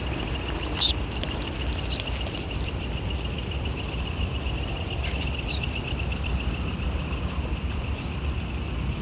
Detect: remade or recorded recorded